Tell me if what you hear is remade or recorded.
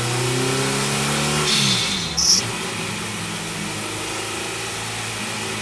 recorded